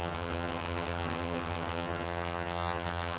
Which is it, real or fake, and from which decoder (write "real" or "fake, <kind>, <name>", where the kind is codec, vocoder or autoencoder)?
fake, vocoder, HiFi-GAN